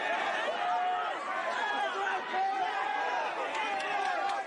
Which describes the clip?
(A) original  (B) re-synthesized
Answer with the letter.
A